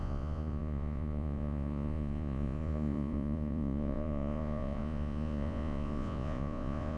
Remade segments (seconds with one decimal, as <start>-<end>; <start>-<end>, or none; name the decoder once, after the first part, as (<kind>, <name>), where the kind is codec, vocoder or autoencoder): 0.0-7.0 (vocoder, Vocos)